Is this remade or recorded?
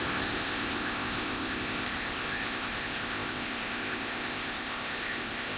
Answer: remade